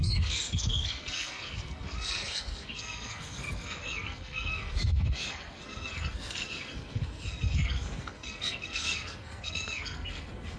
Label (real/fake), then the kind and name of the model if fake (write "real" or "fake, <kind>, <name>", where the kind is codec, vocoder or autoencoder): fake, codec, SNAC